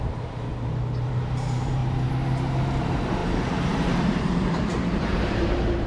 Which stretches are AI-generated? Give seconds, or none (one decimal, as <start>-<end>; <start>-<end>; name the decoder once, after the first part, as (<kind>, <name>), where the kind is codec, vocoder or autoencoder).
0.0-0.5 (vocoder, BigVGAN v2); 1.1-1.8; 2.8-5.9